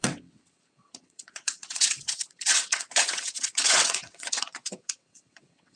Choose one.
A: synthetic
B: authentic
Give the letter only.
A